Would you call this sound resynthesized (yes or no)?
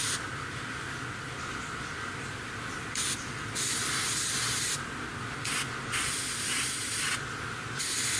no